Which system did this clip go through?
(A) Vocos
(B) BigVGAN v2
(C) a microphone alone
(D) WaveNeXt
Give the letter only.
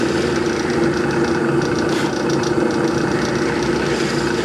C